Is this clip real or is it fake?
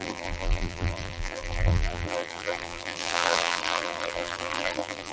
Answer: fake